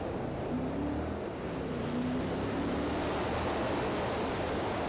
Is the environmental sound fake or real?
real